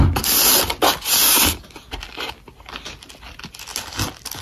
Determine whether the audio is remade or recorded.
recorded